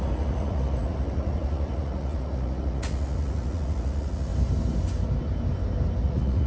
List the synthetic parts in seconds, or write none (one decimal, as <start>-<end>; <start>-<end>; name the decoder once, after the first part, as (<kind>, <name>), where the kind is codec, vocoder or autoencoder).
0.0-4.3 (vocoder, Vocos); 6.0-6.5